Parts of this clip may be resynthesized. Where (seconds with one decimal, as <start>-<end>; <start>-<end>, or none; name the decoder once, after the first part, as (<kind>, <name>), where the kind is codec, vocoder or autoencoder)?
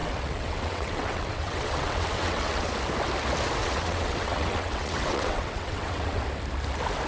0.0-2.7 (vocoder, WaveNeXt); 3.6-6.2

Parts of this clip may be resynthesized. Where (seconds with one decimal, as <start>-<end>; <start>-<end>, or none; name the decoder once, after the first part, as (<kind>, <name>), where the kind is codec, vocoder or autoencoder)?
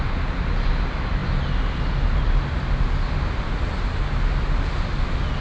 none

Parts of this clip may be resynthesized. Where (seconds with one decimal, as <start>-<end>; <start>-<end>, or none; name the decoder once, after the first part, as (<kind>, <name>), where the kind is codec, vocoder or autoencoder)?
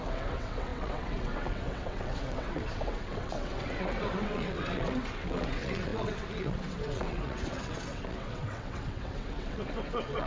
0.0-10.3 (vocoder, WaveNeXt)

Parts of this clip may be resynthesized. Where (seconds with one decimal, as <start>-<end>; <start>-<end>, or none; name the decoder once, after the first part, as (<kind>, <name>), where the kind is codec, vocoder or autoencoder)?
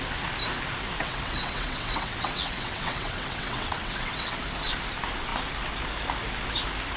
1.0-4.4 (vocoder, WaveNeXt)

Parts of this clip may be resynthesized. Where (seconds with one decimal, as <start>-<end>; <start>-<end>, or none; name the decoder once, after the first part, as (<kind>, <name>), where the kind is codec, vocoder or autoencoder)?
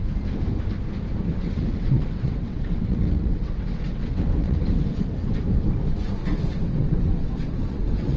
1.3-5.4 (vocoder, WaveNeXt); 6.2-8.2